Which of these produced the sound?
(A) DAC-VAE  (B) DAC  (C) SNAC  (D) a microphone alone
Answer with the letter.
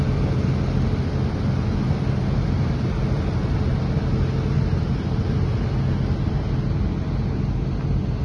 D